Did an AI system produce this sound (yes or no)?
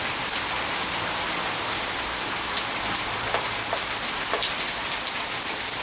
no